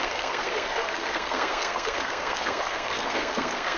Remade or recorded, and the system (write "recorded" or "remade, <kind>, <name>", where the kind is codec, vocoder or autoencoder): remade, codec, SNAC